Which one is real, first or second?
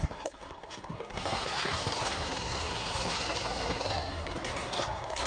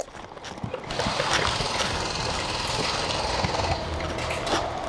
second